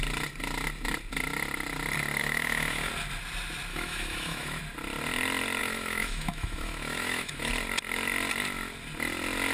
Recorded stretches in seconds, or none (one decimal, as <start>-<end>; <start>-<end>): 0.0-2.2; 2.9-3.7; 4.6-5.6; 7.5-9.5